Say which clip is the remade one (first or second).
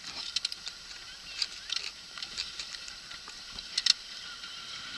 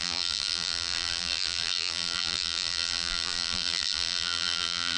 second